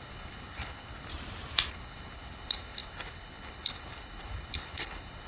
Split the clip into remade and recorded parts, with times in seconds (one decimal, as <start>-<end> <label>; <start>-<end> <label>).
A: 0.0-1.1 remade; 1.1-1.7 recorded; 1.7-5.3 remade